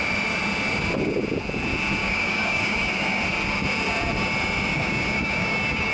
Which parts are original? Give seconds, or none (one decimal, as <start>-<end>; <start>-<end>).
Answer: 0.0-2.0; 3.2-4.7